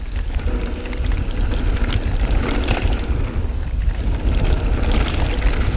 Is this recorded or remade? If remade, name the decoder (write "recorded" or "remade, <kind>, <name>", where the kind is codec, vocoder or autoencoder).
recorded